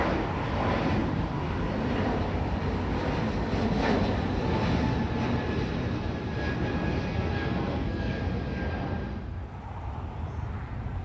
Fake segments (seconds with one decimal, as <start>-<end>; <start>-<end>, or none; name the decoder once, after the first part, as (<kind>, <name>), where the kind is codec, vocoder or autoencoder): 7.1-8.2 (codec, SNAC)